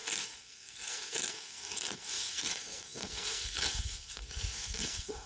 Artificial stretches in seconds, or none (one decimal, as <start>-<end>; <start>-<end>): 0.0-5.3